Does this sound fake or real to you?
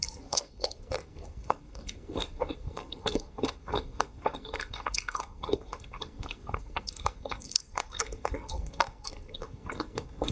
fake